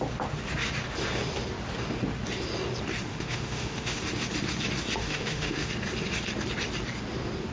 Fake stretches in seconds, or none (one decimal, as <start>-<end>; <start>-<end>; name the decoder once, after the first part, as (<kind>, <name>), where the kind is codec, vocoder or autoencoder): 3.1-4.0 (autoencoder, DAC-VAE); 5.0-5.7